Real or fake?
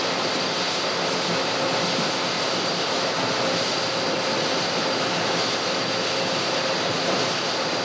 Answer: real